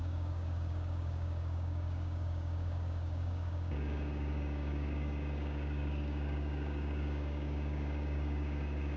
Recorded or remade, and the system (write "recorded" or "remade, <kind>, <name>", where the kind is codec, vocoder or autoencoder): remade, codec, DAC